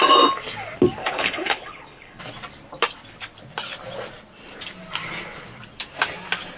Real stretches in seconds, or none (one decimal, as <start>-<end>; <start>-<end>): 0.0-1.0; 2.2-6.6